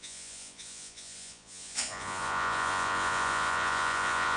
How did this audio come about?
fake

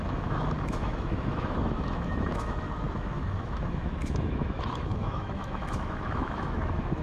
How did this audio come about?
fake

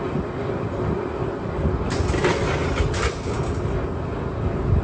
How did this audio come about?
real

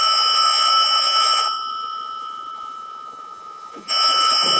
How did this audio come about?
fake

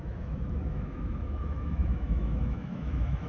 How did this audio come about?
fake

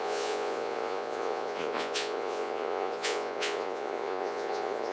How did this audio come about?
fake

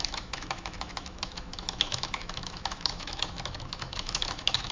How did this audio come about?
fake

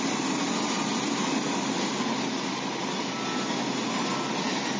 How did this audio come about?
real